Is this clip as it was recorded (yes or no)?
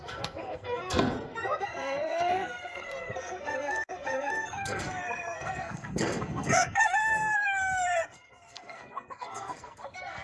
no